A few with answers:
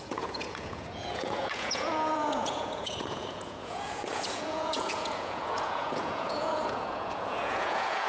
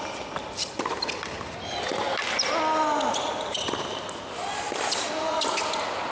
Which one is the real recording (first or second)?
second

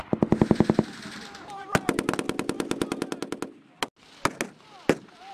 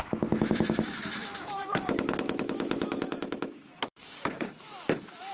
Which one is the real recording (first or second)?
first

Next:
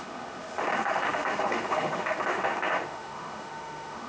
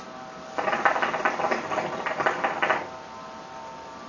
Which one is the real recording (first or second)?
second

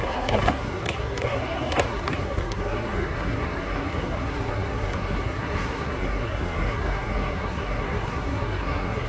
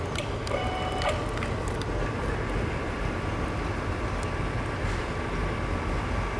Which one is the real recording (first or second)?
second